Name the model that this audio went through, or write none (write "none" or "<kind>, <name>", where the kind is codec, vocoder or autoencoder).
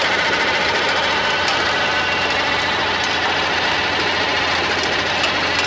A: none